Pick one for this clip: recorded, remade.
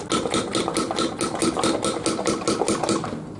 recorded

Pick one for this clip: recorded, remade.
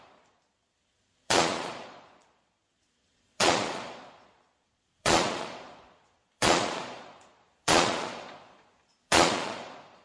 remade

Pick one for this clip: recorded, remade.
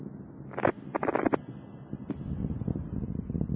recorded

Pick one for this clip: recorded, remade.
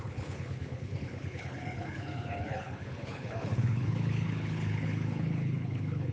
remade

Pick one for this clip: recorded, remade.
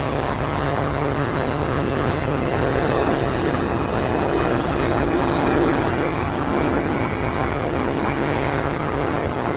remade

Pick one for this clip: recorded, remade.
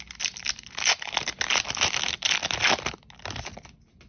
recorded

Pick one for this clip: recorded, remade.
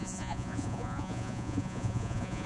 remade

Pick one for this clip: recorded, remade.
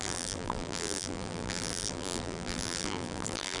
remade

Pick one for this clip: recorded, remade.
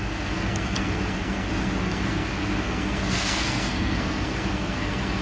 remade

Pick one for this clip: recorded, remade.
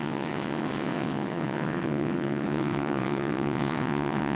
remade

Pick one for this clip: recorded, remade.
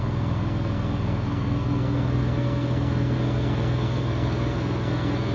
remade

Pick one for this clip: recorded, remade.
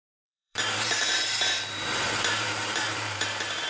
remade